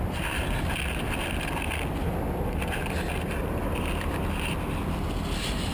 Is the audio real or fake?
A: real